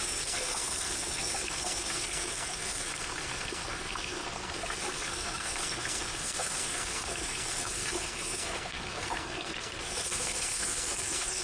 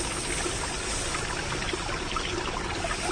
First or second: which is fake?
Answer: first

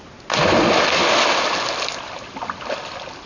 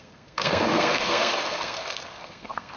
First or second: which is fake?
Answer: second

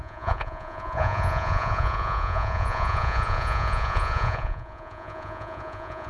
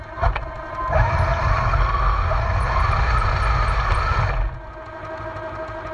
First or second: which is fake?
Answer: first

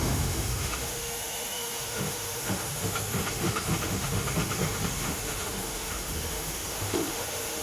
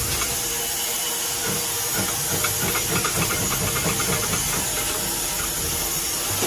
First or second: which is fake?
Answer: first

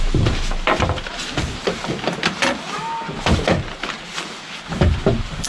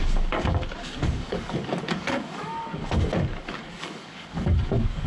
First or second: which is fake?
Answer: second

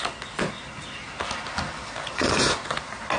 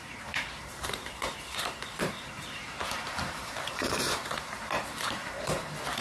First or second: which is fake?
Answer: second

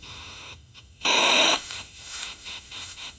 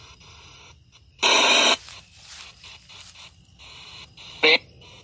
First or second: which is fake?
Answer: first